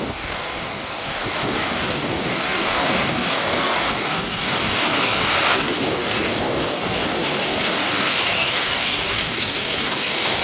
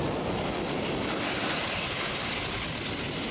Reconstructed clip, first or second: first